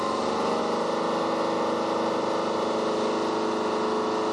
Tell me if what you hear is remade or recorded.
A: recorded